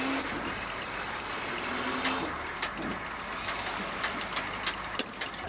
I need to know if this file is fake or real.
real